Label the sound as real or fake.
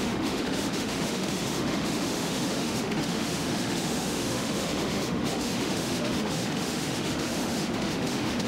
fake